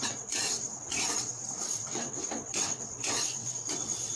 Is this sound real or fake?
fake